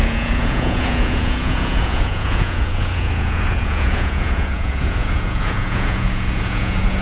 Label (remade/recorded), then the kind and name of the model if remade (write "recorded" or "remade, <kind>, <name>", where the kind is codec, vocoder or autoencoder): remade, vocoder, Vocos